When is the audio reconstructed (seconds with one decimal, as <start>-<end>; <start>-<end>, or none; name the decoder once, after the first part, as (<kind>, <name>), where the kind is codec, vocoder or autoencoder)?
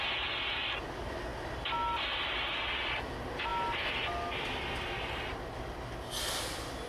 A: none